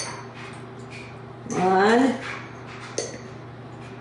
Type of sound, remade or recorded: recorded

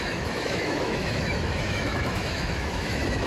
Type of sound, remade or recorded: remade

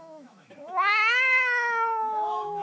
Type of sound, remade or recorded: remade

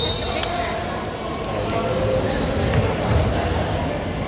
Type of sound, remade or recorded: recorded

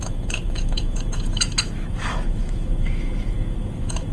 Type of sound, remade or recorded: remade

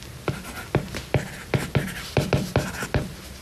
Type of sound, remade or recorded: recorded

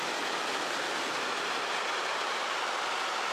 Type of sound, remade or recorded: recorded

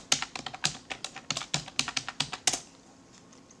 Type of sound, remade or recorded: recorded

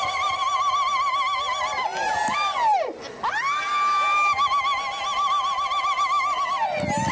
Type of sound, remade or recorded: recorded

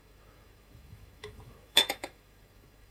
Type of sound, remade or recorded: remade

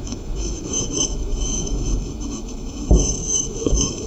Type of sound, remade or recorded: remade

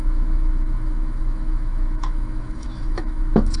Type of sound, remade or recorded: remade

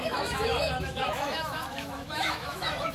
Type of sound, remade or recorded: remade